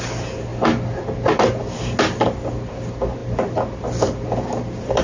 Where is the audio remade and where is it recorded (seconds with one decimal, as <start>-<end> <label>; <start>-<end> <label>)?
0.0-5.0 recorded